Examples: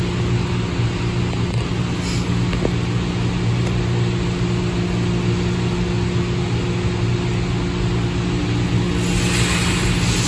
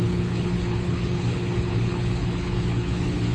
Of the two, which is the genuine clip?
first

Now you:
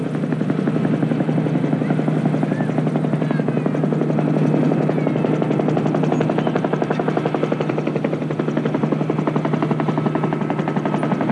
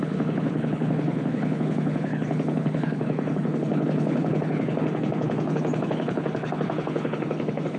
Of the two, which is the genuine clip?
first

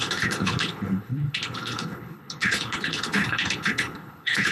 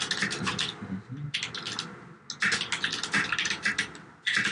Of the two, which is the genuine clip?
second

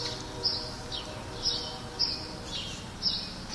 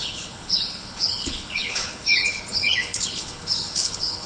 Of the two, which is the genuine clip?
first